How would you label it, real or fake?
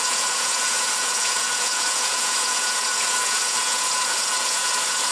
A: fake